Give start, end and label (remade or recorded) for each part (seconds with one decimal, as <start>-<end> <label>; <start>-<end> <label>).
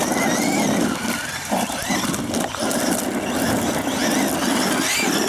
0.0-1.3 recorded; 1.3-1.9 remade; 1.9-5.3 recorded